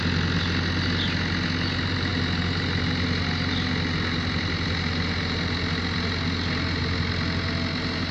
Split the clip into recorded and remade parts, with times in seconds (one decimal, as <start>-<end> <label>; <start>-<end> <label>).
0.0-8.1 recorded